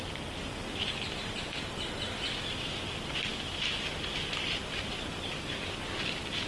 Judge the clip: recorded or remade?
recorded